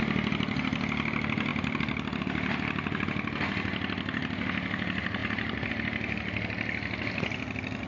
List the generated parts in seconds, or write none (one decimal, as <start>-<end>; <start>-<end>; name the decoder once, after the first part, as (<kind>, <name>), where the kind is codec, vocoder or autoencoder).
none